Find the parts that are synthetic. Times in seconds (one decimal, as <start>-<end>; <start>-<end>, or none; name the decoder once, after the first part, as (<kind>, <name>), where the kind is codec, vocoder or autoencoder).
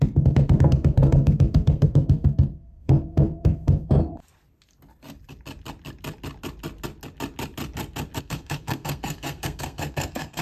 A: 0.0-4.2 (codec, SNAC); 8.2-10.4